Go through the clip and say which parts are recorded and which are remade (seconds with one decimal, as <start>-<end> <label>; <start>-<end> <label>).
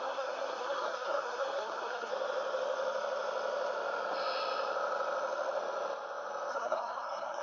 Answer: 0.0-2.1 remade; 2.1-6.5 recorded; 6.5-7.4 remade